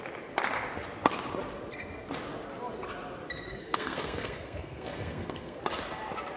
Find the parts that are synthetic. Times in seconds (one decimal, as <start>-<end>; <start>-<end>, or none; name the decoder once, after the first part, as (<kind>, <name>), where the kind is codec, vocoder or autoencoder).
3.6-5.6 (codec, SNAC)

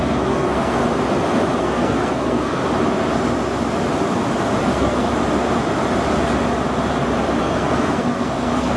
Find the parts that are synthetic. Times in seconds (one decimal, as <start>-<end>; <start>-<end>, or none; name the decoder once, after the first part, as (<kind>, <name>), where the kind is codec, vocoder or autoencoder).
0.0-0.8 (codec, SNAC); 1.6-2.6; 4.6-5.1; 7.4-8.8

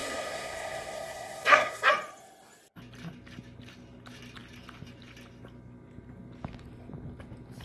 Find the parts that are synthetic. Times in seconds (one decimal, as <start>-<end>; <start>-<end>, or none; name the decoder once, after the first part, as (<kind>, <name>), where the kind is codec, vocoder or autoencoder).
0.0-1.9 (codec, SNAC)